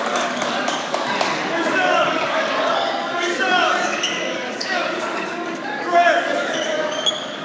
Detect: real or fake fake